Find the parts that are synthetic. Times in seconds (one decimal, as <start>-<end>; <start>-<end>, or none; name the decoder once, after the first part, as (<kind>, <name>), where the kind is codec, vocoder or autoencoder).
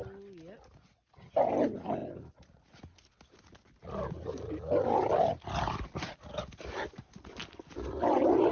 none